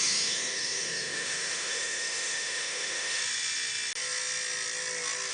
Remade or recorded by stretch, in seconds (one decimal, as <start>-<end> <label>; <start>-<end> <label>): 0.0-3.2 remade; 3.2-5.3 recorded